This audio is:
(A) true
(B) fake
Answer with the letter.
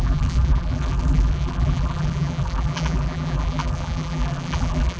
B